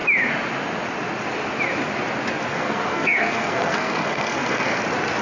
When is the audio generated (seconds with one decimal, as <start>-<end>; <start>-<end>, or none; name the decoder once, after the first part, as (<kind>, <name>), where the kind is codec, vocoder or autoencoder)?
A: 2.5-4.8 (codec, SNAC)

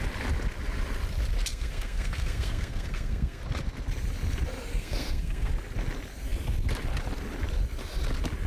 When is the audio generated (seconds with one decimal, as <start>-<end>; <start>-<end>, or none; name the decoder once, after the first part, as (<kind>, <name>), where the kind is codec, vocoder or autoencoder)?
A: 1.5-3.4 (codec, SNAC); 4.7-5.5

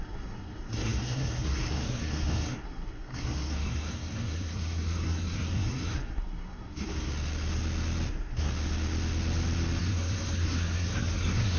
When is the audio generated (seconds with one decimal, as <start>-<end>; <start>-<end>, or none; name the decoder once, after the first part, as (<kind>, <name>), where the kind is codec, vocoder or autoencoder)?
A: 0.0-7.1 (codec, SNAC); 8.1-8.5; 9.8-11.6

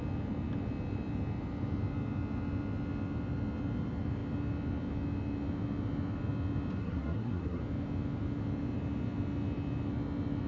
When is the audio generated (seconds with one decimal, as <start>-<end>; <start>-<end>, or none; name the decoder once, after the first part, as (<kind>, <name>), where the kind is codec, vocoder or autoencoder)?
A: 6.8-7.6 (codec, SNAC)

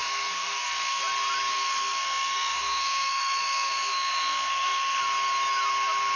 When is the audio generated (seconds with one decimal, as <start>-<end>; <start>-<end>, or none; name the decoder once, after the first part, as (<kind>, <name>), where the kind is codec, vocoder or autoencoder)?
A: 0.0-1.0 (codec, SNAC); 1.5-5.0